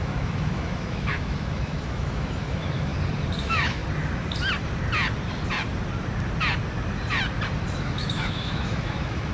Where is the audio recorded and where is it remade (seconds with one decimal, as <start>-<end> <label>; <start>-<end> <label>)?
0.0-2.9 remade; 2.9-3.4 recorded; 3.4-3.8 remade; 3.8-7.8 recorded; 7.8-9.3 remade